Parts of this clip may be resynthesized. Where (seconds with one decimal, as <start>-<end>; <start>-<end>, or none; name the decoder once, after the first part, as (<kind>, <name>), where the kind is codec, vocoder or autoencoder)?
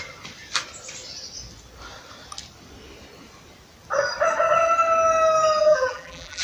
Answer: 5.6-6.4 (vocoder, BigVGAN v2)